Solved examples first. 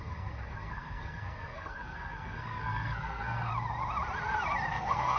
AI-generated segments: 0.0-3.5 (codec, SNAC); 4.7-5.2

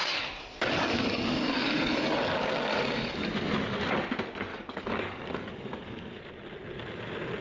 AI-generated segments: 0.0-3.3 (codec, DAC); 4.5-6.2

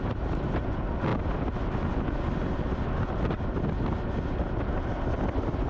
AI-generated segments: none

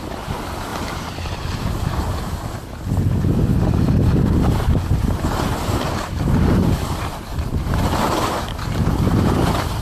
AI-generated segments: none

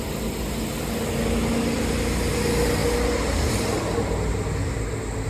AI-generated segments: none